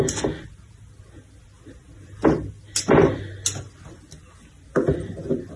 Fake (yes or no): no